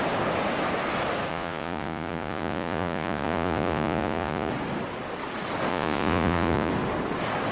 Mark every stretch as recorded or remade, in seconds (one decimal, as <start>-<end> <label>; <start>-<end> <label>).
0.0-1.3 recorded; 1.3-4.5 remade; 4.5-5.7 recorded; 5.7-6.7 remade; 6.7-7.5 recorded